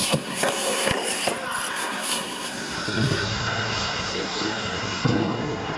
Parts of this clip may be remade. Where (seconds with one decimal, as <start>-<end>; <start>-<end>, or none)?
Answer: 0.0-0.9; 1.7-5.8